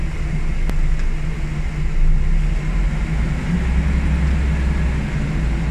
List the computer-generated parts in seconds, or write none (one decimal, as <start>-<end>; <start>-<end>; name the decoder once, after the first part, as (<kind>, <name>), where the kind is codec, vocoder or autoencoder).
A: none